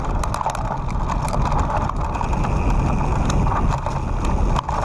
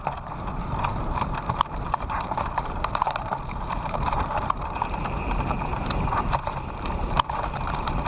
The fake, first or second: second